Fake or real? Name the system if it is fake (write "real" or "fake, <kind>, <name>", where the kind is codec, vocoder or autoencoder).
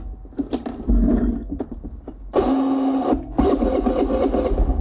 real